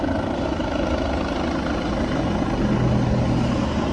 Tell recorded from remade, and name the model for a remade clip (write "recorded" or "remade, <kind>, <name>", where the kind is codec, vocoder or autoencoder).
recorded